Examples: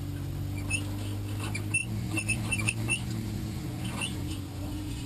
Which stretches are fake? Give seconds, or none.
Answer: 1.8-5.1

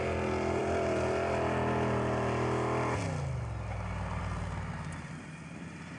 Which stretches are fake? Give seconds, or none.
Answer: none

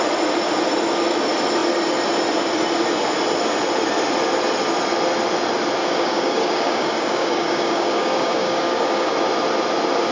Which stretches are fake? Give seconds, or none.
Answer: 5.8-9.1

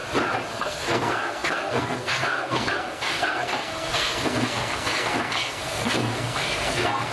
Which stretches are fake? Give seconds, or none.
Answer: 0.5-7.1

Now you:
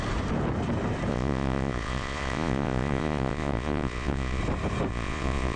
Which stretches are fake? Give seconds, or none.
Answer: 1.1-4.4; 4.9-5.6

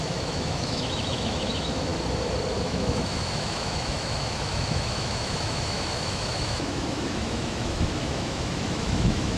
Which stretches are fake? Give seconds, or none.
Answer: 0.0-1.9; 2.6-9.4

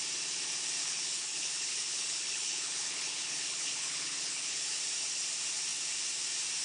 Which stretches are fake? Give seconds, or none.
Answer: 0.8-4.8

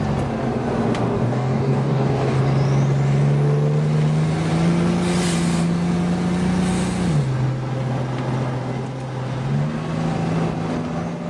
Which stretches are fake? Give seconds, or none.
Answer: 1.2-2.4